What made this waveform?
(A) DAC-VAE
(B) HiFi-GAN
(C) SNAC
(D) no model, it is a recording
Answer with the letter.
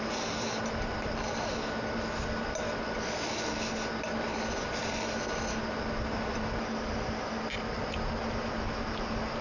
D